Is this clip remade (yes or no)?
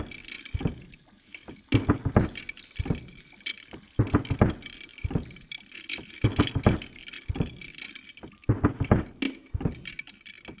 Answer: no